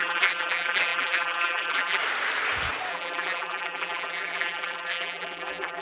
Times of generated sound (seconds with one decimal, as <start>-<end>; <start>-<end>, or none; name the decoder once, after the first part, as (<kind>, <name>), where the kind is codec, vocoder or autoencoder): 0.0-2.0 (vocoder, BigVGAN v2); 2.9-5.8